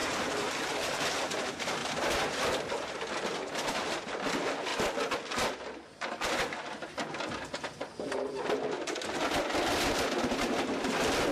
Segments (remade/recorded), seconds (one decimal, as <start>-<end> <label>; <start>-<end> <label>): 0.0-1.0 remade; 1.0-11.3 recorded